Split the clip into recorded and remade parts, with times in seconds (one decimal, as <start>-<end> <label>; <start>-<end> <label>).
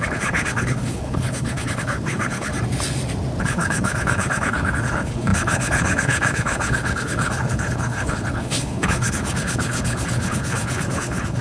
0.0-2.5 remade; 2.5-3.4 recorded; 3.4-11.4 remade